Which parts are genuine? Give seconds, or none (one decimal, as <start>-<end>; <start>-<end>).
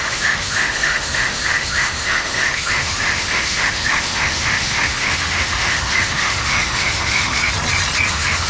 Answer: 7.4-8.1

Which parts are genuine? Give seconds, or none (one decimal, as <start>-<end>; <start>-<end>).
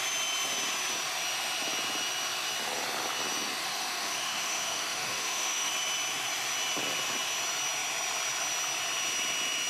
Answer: 0.0-3.6; 5.7-9.7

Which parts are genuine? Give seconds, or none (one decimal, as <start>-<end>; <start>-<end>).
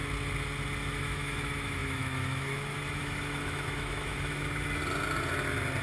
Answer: 0.0-0.9; 4.8-5.8